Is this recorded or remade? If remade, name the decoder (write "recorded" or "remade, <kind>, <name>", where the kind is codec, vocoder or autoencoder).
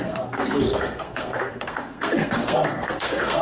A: remade, codec, SNAC